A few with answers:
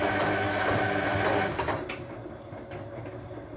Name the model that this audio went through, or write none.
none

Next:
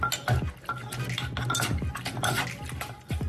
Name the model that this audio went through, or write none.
none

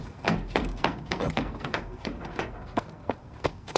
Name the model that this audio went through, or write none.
codec, SNAC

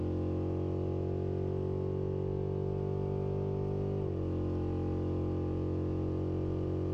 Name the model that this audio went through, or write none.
none